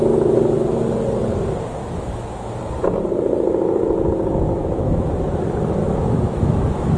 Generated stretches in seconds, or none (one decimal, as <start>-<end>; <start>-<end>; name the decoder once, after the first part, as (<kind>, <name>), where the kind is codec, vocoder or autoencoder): 1.8-2.6 (autoencoder, DAC-VAE); 4.6-5.1; 5.8-6.6